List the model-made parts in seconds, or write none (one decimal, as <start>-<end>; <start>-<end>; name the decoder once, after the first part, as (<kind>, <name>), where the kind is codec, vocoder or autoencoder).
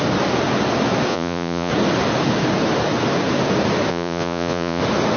1.1-1.7 (vocoder, Vocos); 3.9-4.8